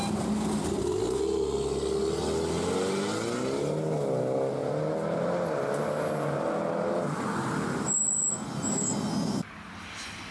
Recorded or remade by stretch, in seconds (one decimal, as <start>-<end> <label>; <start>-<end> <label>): 0.0-10.3 recorded